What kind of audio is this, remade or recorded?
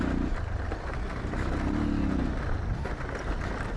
recorded